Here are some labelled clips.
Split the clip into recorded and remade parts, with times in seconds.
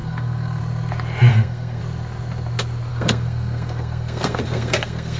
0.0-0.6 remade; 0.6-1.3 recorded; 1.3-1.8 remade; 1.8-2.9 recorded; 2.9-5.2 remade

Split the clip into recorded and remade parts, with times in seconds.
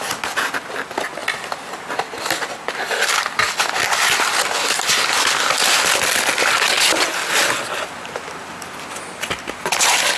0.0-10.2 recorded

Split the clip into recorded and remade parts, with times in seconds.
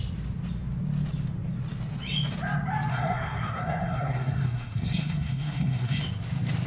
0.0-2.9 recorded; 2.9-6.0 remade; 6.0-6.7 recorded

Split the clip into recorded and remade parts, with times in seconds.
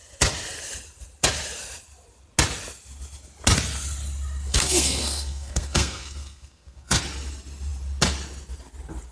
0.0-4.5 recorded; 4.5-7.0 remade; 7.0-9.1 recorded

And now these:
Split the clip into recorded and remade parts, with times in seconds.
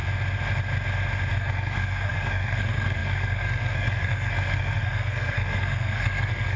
0.0-1.3 recorded; 1.3-6.6 remade